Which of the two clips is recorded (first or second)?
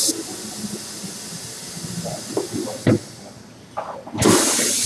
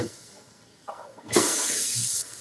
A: first